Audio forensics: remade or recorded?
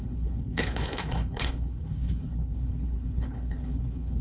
remade